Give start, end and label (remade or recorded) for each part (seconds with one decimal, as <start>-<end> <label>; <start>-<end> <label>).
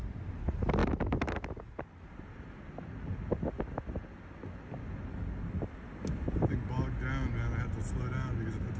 0.0-8.8 recorded